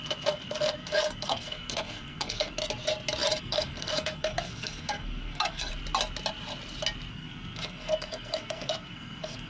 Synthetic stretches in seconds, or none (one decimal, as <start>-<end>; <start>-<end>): 0.0-2.6; 3.4-5.7; 7.1-9.5